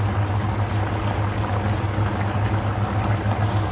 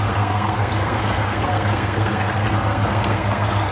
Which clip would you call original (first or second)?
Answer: first